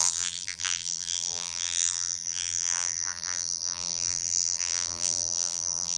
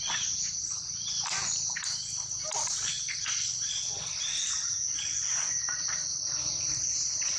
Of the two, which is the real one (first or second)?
second